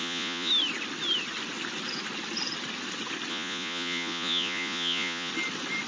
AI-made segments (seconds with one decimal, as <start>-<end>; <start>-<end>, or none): 0.0-0.5; 3.3-5.3